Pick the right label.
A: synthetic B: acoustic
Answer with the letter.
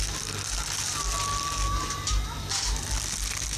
B